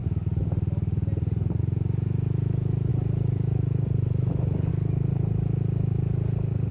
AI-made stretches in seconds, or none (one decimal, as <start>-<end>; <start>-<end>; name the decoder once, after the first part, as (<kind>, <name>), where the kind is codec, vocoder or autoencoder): 2.9-4.7 (vocoder, BigVGAN v2)